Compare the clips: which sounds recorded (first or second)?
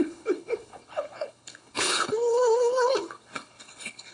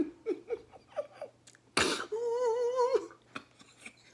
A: second